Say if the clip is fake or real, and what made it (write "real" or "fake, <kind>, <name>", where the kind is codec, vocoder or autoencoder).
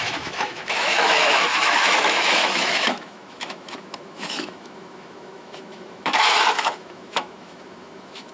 fake, autoencoder, DAC-VAE